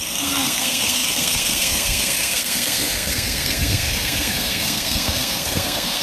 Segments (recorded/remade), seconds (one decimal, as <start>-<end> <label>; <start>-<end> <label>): 0.0-6.0 remade